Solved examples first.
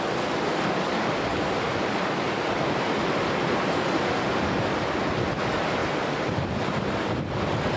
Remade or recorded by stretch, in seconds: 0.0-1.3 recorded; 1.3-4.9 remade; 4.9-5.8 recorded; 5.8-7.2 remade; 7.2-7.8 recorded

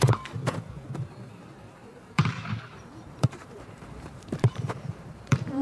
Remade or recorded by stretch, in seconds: 0.0-5.6 remade

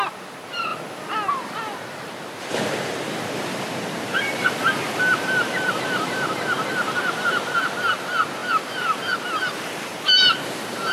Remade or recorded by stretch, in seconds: 0.0-0.7 remade; 0.7-1.3 recorded; 1.3-10.9 remade

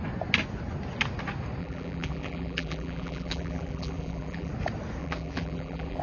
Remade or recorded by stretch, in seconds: 0.0-1.6 recorded; 1.6-4.5 remade; 4.5-5.0 recorded; 5.0-6.0 remade

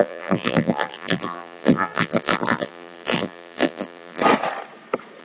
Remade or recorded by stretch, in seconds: 0.0-4.2 remade; 4.2-5.2 recorded